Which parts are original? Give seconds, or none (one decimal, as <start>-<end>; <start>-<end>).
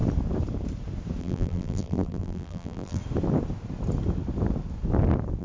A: 0.0-1.2; 3.0-5.4